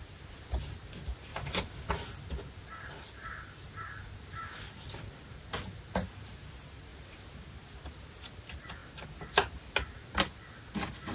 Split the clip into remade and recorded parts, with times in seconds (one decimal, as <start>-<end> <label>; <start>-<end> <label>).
0.0-11.1 recorded